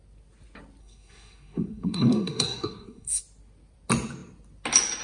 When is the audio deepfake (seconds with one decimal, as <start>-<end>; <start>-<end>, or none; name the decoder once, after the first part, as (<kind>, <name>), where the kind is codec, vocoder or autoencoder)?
0.8-3.2 (codec, SNAC)